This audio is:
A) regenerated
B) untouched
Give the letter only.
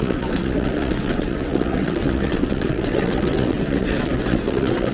A